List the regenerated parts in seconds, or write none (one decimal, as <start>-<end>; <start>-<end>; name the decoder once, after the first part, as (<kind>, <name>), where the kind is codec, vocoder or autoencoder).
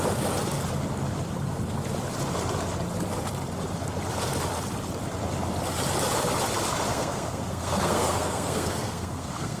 6.9-9.6 (codec, SNAC)